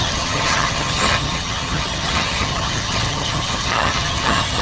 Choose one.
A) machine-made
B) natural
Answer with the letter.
A